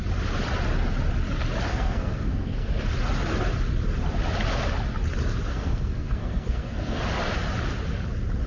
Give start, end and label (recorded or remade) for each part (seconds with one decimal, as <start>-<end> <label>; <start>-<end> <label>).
0.0-1.7 recorded; 1.7-2.7 remade; 2.7-5.5 recorded; 5.5-7.0 remade; 7.0-8.5 recorded